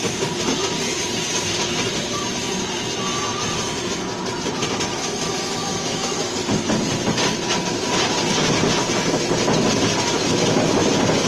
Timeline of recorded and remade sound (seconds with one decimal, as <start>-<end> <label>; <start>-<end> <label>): 0.0-5.7 recorded; 5.7-6.3 remade; 6.3-11.3 recorded